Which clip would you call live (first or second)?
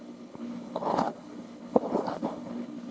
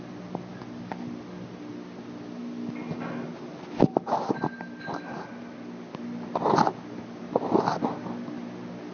second